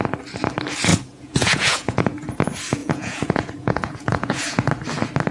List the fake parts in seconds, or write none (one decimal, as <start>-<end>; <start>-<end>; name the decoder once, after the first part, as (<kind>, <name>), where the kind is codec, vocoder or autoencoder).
0.9-2.3 (vocoder, Vocos); 2.8-4.7